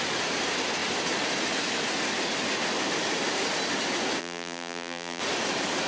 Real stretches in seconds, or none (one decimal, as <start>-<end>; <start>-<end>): 0.0-4.2; 5.2-5.9